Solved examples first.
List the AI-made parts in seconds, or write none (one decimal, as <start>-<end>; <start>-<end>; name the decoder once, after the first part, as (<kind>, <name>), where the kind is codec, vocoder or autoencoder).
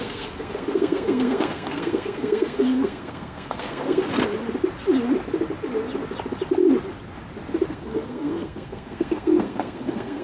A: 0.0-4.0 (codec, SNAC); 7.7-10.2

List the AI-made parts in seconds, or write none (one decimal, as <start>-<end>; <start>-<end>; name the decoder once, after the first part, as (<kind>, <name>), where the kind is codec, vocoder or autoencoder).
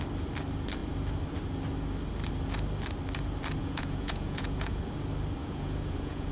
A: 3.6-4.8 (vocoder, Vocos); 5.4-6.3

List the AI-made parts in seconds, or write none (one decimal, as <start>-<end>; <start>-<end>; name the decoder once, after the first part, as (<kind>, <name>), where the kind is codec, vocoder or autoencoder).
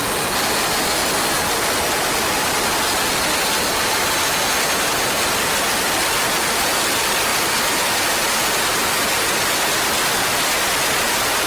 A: 7.3-8.1 (vocoder, BigVGAN v2)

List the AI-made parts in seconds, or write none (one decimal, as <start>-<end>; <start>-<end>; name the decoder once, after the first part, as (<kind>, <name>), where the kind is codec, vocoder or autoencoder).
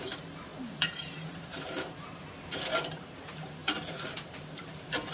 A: 0.0-5.1 (vocoder, BigVGAN v2)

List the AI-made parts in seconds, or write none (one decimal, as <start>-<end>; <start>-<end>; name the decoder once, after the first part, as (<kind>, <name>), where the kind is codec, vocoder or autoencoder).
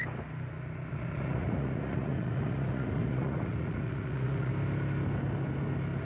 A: 0.9-4.5 (vocoder, Vocos)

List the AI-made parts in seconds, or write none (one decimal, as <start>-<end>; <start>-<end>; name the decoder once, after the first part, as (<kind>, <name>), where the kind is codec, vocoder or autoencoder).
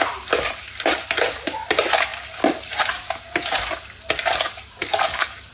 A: 4.8-5.5 (codec, DAC)